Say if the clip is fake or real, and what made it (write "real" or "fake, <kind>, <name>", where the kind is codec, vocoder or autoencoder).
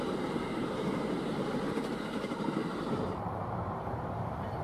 fake, vocoder, BigVGAN v2